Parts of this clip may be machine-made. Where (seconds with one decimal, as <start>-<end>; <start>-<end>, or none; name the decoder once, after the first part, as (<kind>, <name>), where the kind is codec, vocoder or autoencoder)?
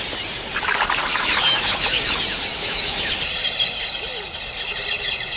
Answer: 1.1-2.1 (autoencoder, DAC-VAE); 2.5-3.1